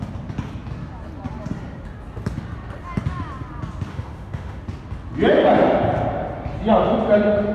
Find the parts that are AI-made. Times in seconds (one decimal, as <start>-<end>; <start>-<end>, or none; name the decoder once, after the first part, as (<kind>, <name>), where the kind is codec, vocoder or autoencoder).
3.9-4.6 (autoencoder, DAC-VAE)